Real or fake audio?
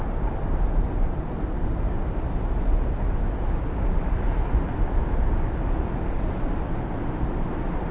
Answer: real